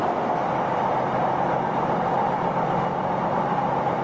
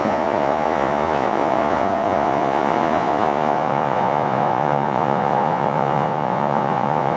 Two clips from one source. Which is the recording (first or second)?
first